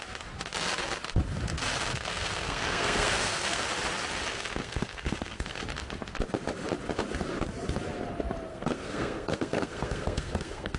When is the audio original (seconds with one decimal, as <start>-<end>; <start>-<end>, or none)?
0.0-1.9; 3.6-4.3; 5.6-8.5